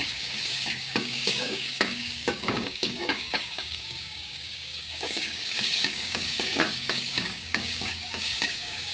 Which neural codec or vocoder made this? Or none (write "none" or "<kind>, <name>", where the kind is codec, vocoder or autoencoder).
codec, DAC